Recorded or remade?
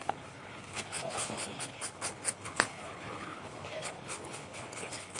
remade